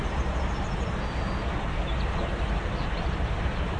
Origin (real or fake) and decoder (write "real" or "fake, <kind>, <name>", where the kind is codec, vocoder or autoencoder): real